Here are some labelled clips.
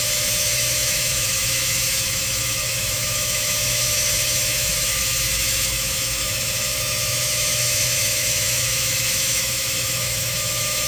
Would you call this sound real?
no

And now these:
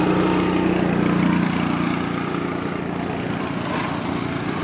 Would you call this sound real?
yes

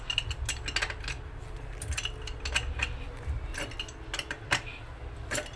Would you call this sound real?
yes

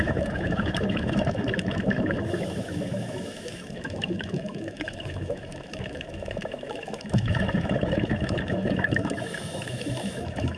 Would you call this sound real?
no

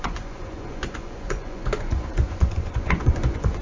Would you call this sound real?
no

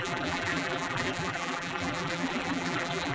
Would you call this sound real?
no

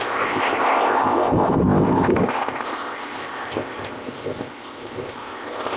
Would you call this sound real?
no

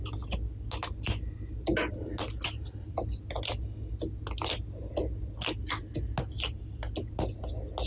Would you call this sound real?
yes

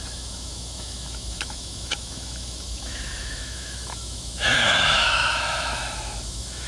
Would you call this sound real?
no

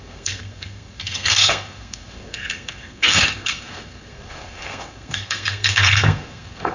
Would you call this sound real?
no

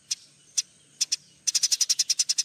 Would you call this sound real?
yes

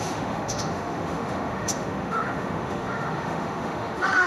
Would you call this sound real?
no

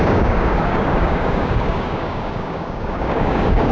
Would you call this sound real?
no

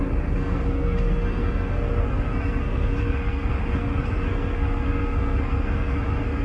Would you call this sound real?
no